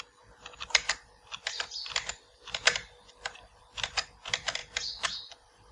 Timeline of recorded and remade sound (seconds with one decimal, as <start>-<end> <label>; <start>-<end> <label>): 0.0-4.6 remade; 4.6-5.3 recorded; 5.3-5.7 remade